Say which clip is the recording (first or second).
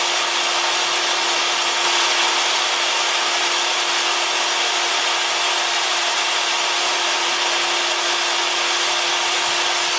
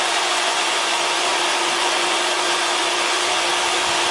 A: first